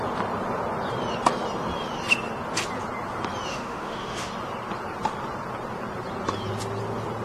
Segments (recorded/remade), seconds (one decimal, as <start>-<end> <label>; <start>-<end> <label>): 0.0-3.5 recorded; 3.5-4.3 remade; 4.3-7.2 recorded

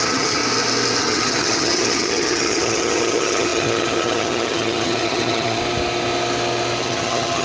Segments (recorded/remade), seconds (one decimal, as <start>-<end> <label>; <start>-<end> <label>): 0.0-0.4 remade; 0.4-1.0 recorded; 1.0-5.6 remade; 5.6-6.8 recorded; 6.8-7.4 remade

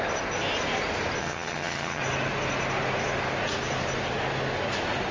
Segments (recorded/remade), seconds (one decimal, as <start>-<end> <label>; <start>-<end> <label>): 0.0-1.2 recorded; 1.2-2.0 remade; 2.0-5.1 recorded

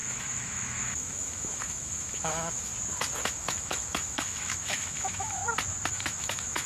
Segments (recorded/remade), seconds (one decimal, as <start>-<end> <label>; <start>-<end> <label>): 0.0-2.7 remade; 2.7-3.2 recorded; 3.2-5.4 remade; 5.4-5.9 recorded; 5.9-6.7 remade